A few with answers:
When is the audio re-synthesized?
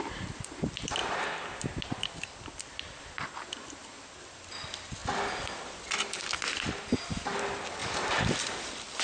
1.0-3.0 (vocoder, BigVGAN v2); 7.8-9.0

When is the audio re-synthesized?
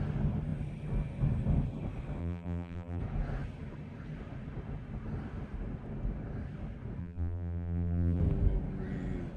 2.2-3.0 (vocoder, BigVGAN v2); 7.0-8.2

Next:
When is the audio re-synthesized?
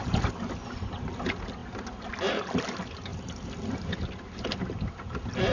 3.1-3.7 (vocoder, BigVGAN v2)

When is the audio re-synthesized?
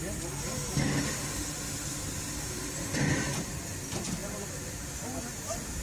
none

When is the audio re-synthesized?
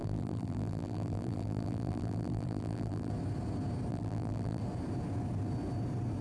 0.0-3.1 (vocoder, BigVGAN v2); 3.9-4.6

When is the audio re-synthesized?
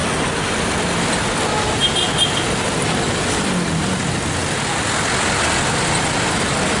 none